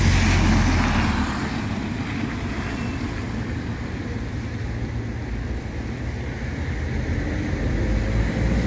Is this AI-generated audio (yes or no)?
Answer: no